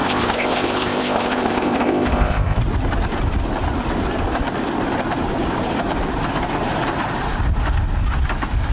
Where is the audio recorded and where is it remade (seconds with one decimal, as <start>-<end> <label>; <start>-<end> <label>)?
0.0-2.6 remade; 2.6-8.7 recorded